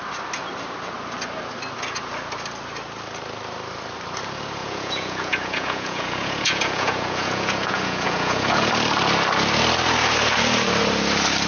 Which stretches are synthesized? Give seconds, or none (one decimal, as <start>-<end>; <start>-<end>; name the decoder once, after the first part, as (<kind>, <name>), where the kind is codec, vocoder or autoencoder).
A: 4.6-8.7 (vocoder, Vocos)